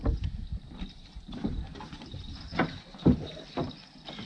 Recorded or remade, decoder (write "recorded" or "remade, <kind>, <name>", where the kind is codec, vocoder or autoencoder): recorded